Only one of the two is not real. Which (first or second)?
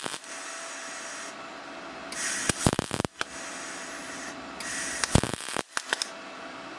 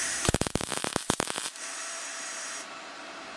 second